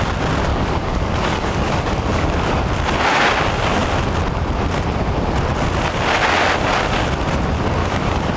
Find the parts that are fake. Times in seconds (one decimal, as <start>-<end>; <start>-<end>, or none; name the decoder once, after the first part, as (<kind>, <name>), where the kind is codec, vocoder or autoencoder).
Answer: 0.5-2.6 (codec, DAC); 7.8-8.4